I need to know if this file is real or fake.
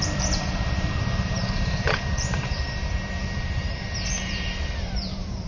fake